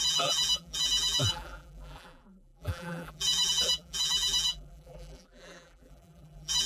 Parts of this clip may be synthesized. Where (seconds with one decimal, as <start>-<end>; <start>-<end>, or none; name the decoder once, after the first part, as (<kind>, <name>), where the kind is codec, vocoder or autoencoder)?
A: 0.0-6.7 (vocoder, BigVGAN v2)